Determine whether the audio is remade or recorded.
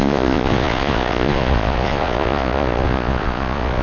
remade